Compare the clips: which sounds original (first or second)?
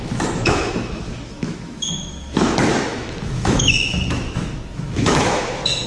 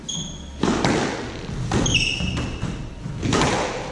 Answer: second